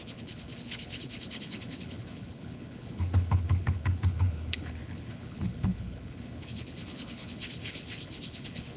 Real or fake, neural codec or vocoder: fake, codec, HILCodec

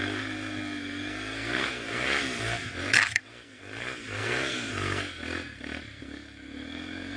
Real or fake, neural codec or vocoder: fake, codec, SNAC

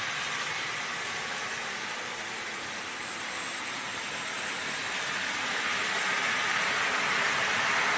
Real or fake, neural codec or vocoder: real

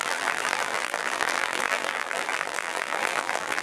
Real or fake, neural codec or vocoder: fake, vocoder, BigVGAN v2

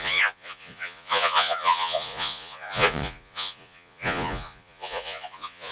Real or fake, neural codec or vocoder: fake, vocoder, Vocos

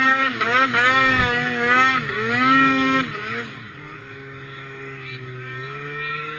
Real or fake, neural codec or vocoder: fake, codec, DAC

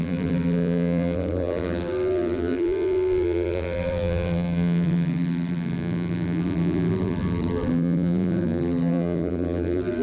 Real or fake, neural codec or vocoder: fake, vocoder, BigVGAN v2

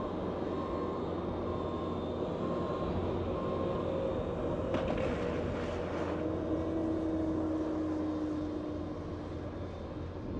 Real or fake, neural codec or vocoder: real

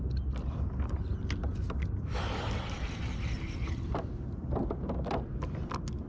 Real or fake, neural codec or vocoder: real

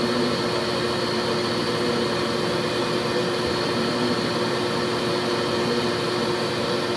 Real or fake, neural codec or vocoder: real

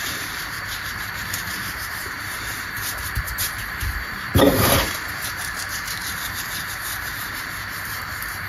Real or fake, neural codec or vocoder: fake, vocoder, BigVGAN v2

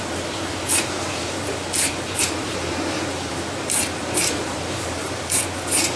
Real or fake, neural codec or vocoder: fake, vocoder, BigVGAN v2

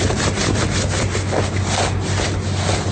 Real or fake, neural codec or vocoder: real